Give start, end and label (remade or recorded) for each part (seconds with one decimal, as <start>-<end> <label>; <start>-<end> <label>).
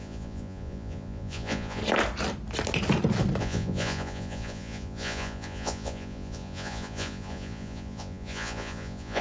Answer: 0.0-1.8 remade; 1.8-3.4 recorded; 3.4-9.2 remade